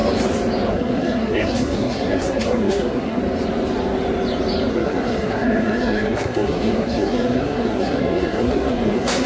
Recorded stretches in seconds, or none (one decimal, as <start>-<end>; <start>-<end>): 0.0-0.7; 3.2-4.7